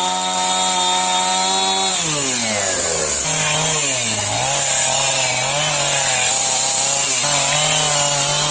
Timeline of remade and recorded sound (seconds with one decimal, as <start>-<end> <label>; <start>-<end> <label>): 0.0-8.5 recorded